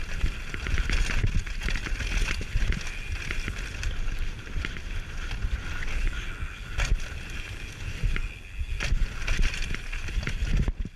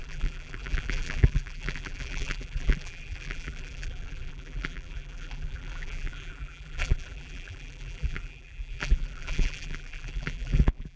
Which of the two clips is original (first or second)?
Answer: first